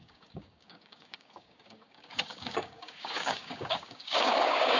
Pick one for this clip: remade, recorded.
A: remade